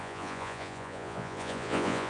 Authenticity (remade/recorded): remade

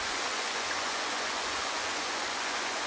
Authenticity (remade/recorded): remade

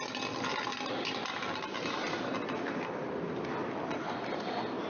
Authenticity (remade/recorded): recorded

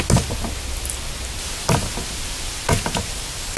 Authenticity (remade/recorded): recorded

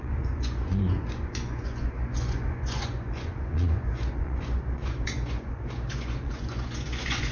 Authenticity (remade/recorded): remade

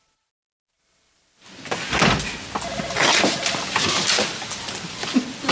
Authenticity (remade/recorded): recorded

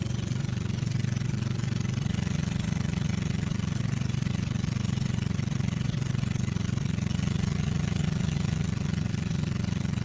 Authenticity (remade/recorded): remade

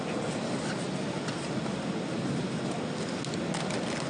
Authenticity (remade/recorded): recorded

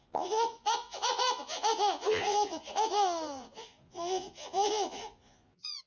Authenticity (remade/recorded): remade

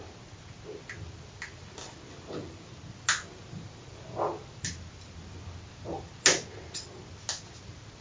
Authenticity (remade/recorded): recorded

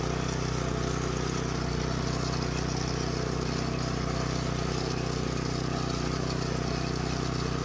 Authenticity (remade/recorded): recorded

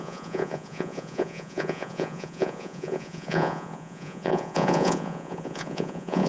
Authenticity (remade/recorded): remade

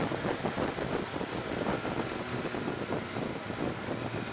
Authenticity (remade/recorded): recorded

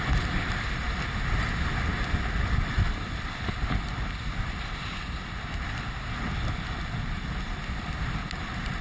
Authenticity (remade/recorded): recorded